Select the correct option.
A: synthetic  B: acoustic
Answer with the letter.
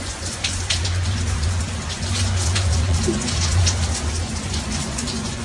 A